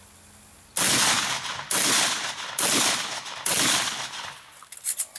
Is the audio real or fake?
real